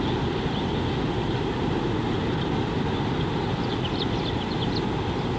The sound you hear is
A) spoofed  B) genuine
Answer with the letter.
B